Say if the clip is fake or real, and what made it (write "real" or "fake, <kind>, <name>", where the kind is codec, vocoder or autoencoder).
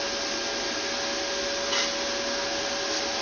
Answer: real